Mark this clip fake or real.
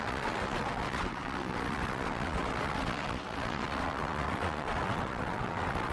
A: fake